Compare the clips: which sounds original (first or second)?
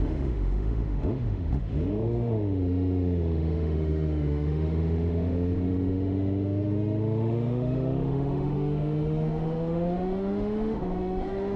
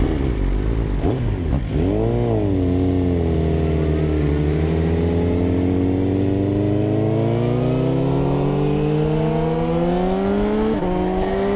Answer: second